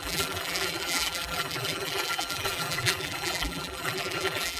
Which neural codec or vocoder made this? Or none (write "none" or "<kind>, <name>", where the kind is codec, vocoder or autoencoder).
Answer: vocoder, BigVGAN v2